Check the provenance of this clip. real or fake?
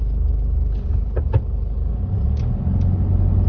real